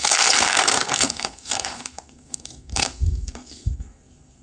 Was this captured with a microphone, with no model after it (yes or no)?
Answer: no